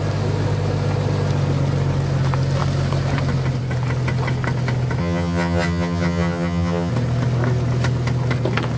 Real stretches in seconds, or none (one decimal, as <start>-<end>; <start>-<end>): 0.0-5.0; 6.9-8.8